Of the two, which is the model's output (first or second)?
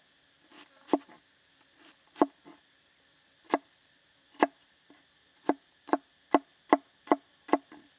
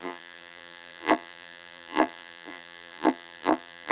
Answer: second